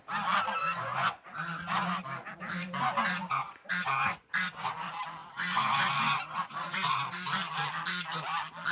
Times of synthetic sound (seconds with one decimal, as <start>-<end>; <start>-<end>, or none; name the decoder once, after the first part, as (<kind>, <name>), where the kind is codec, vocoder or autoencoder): 0.6-2.0 (vocoder, Vocos); 3.2-4.7; 5.2-7.0